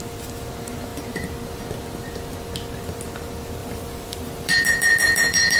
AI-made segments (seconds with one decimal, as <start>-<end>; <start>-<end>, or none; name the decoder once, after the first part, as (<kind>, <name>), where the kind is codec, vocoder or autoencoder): 3.6-5.6 (vocoder, BigVGAN v2)